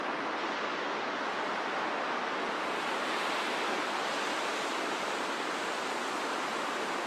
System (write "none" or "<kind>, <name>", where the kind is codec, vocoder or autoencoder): none